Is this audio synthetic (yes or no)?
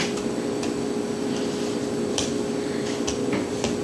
no